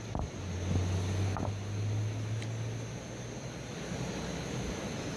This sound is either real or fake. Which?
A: real